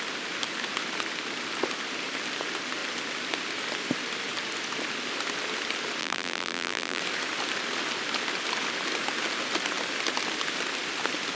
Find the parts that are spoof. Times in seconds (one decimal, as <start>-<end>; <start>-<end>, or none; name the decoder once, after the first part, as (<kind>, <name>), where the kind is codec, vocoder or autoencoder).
6.0-7.0 (vocoder, BigVGAN v2)